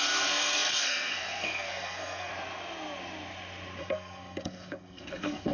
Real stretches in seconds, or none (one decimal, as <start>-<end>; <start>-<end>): 2.3-3.8

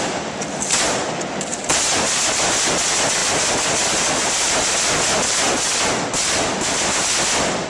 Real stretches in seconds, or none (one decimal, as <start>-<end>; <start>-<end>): 0.0-7.7

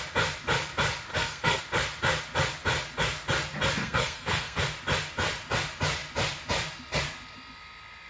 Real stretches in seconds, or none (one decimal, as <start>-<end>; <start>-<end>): 0.0-1.1; 1.6-3.8; 4.6-8.1